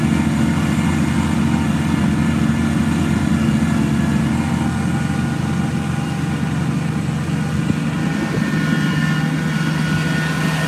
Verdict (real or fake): real